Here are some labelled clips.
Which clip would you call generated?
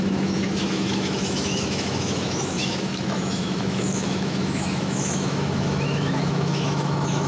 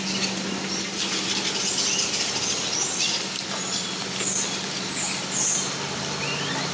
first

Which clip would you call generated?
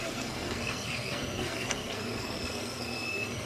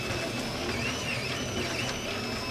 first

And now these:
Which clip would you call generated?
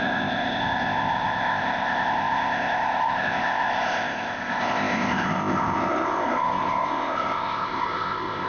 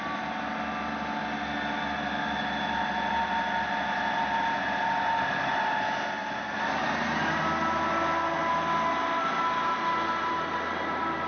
first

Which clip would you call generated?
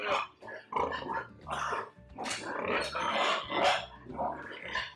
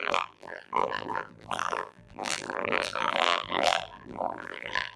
second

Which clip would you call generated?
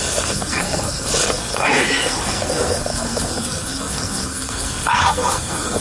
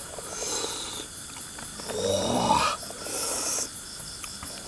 first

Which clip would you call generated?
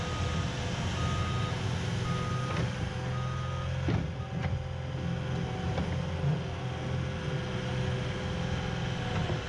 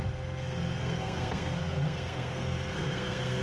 second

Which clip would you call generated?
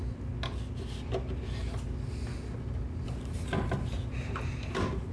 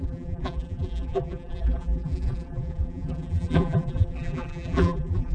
second